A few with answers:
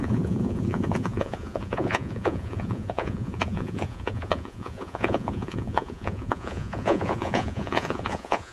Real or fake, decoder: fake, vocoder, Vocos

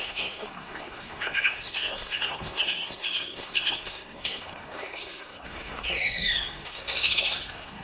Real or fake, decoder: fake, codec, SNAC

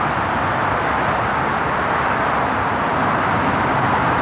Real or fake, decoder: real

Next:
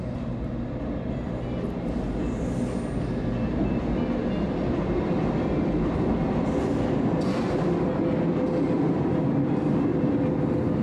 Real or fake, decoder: real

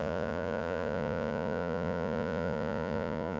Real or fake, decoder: fake, vocoder, Vocos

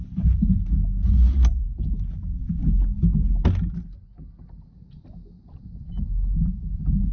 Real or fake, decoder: real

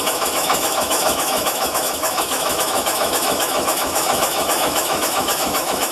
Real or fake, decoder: fake, autoencoder, DAC-VAE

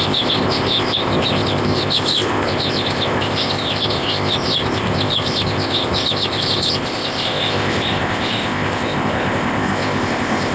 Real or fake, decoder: fake, codec, ZipCodec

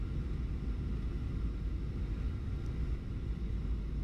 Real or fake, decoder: real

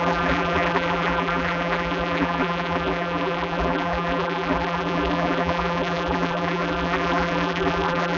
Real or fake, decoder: fake, vocoder, BigVGAN v2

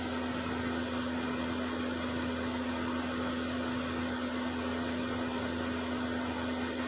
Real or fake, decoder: real